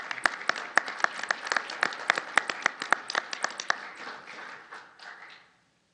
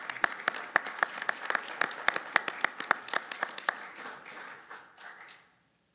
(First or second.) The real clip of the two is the second